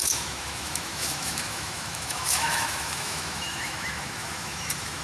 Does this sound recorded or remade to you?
remade